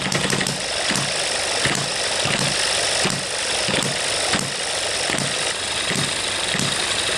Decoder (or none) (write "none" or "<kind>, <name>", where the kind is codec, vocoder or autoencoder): none